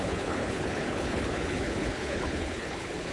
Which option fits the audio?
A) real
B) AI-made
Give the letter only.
B